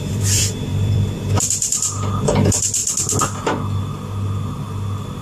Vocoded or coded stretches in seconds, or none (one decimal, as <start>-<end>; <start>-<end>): 0.0-2.8; 3.8-5.2